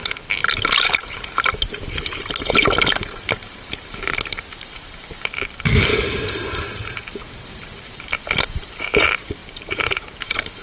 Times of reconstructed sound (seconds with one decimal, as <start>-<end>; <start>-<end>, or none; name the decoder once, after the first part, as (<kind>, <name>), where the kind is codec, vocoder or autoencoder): 2.2-2.6 (vocoder, BigVGAN v2); 4.5-5.9; 7.5-10.6